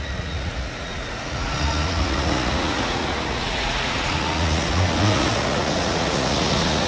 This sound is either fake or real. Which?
fake